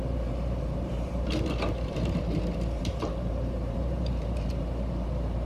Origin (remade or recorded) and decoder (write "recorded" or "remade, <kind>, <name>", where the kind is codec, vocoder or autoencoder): remade, vocoder, BigVGAN v2